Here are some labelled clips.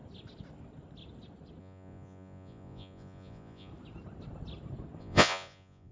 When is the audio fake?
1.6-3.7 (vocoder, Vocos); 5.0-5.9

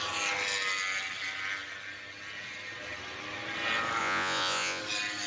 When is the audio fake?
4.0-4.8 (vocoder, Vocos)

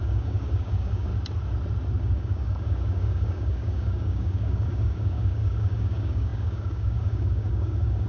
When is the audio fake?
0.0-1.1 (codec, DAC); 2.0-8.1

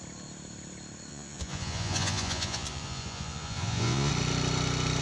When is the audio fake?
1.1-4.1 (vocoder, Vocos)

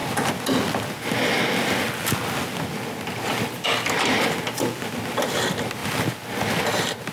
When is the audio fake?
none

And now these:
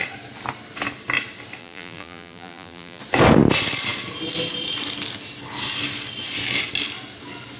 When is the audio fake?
1.6-3.0 (vocoder, BigVGAN v2)

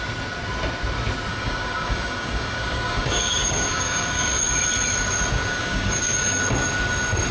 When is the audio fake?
1.3-4.5 (codec, DAC); 5.5-6.4

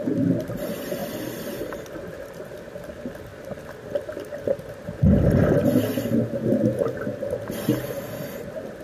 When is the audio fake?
none